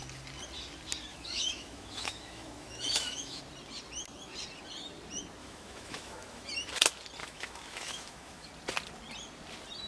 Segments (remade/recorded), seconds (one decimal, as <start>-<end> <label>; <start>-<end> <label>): 0.0-1.1 recorded; 1.1-3.4 remade; 3.4-5.4 recorded; 5.4-6.5 remade; 6.5-7.2 recorded; 7.2-8.5 remade; 8.5-9.9 recorded